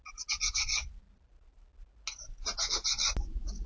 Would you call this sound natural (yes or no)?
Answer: yes